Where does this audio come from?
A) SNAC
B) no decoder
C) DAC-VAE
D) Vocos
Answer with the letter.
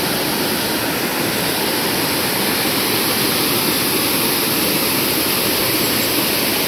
B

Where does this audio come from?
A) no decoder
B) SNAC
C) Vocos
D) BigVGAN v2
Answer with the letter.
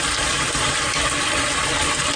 D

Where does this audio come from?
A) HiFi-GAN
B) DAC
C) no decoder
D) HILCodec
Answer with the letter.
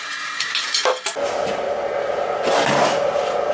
C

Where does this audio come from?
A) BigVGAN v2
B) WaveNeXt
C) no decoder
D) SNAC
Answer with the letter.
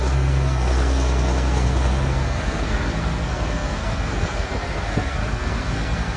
D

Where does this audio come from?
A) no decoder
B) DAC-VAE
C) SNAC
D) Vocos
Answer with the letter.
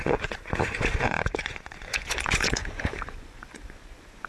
D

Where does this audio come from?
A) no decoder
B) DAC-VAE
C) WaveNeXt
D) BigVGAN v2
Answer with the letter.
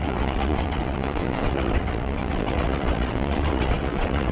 C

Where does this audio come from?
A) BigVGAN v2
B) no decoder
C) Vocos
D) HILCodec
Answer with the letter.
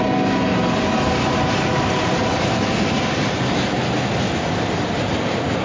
B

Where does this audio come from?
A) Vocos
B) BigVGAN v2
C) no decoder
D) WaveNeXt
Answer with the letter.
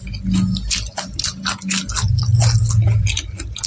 C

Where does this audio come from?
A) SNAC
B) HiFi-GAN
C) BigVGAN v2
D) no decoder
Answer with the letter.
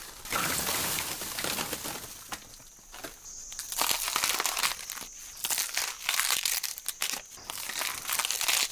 D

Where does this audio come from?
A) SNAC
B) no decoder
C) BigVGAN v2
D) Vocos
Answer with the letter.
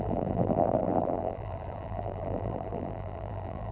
C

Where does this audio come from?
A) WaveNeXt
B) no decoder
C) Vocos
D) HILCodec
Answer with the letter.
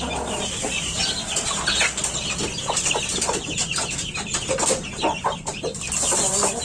B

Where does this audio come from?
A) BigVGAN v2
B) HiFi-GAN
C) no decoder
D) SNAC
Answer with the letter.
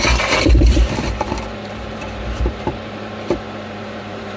A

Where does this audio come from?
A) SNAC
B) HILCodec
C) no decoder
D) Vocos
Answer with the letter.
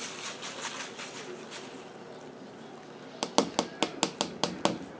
C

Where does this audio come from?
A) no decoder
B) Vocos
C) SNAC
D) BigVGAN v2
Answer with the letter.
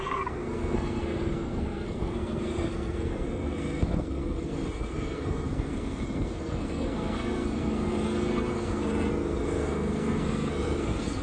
C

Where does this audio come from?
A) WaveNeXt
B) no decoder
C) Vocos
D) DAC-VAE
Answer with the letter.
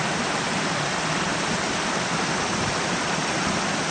B